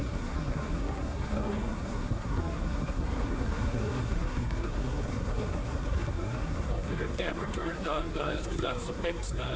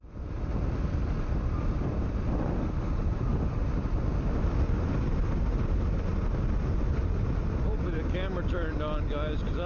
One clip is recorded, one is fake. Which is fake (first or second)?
first